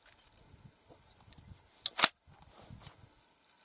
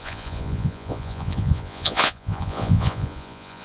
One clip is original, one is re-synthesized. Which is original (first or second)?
first